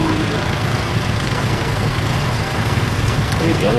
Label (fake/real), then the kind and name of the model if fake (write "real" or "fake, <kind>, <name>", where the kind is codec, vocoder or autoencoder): fake, codec, SNAC